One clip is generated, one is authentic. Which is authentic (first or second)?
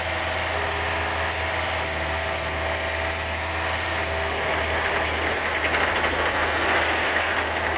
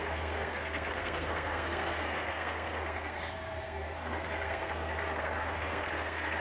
first